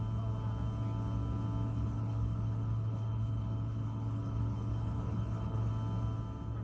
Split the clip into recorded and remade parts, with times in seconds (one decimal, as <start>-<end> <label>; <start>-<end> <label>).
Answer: 0.0-1.7 recorded; 1.7-5.7 remade; 5.7-6.6 recorded